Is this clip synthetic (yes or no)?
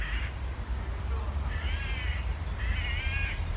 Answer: no